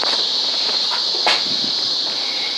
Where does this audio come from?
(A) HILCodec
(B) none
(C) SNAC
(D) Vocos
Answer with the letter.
B